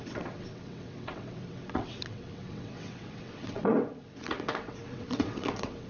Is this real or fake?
fake